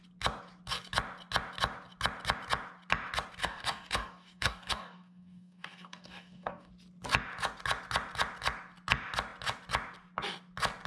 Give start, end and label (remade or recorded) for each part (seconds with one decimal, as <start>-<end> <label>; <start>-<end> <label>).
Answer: 0.0-3.4 recorded; 3.4-6.7 remade; 6.7-10.9 recorded